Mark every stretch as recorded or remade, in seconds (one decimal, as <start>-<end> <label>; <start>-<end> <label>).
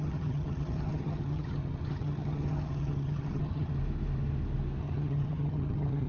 0.0-3.7 remade; 3.7-4.8 recorded; 4.8-6.1 remade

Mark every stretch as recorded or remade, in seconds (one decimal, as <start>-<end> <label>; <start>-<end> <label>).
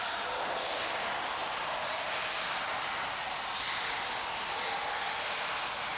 0.0-6.0 recorded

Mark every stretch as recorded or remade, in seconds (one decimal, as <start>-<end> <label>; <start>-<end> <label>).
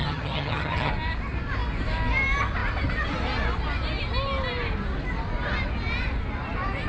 0.0-0.9 remade; 0.9-6.9 recorded